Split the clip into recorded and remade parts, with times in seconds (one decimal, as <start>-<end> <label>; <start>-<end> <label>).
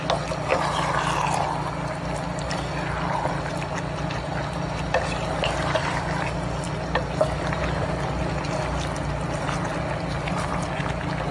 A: 0.0-11.3 recorded